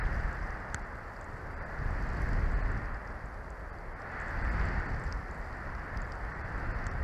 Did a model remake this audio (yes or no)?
no